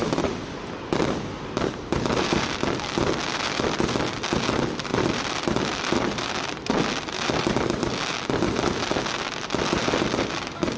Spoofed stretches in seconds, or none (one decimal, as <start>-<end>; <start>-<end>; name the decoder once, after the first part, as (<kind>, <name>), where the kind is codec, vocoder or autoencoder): 0.0-2.8 (vocoder, BigVGAN v2); 4.9-5.6